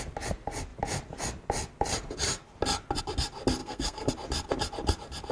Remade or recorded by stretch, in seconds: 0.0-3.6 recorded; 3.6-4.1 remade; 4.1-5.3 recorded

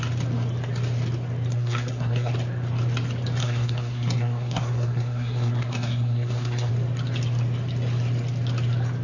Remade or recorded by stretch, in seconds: 0.0-1.5 recorded; 1.5-2.3 remade; 2.3-3.4 recorded; 3.4-6.7 remade; 6.7-9.0 recorded

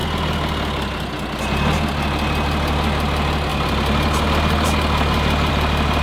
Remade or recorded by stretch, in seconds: 0.0-6.0 recorded

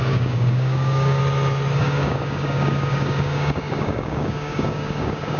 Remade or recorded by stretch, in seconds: 0.0-1.2 remade; 1.2-1.8 recorded; 1.8-5.4 remade

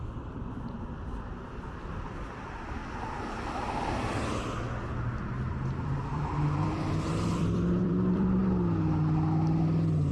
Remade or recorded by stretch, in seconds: 0.0-2.8 remade; 2.8-5.5 recorded; 5.5-8.4 remade; 8.4-10.1 recorded

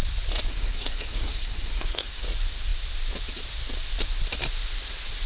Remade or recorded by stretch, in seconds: 0.0-0.5 recorded; 0.5-2.2 remade; 2.2-5.3 recorded

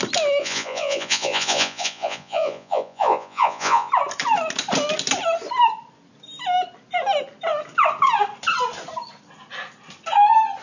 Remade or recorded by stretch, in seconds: 0.0-0.4 recorded; 0.4-3.9 remade; 3.9-10.6 recorded